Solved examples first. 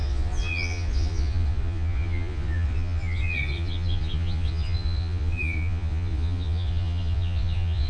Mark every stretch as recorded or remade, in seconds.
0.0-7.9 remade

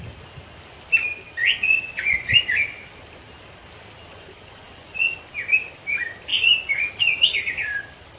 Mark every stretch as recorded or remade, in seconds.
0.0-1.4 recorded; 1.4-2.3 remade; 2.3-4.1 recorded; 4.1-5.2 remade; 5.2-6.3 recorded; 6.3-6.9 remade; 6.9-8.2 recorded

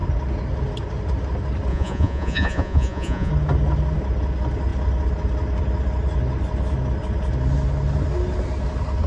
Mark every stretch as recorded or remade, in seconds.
0.0-1.7 recorded; 1.7-3.3 remade; 3.3-9.1 recorded